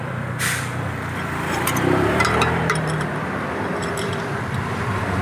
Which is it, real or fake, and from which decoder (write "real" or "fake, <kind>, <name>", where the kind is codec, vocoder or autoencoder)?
fake, vocoder, BigVGAN v2